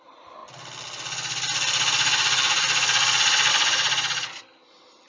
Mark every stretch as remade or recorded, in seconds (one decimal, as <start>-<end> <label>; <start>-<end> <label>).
0.0-5.1 recorded